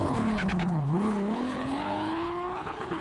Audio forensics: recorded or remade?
remade